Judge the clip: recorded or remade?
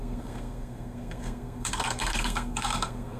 remade